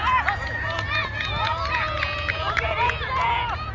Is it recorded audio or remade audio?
remade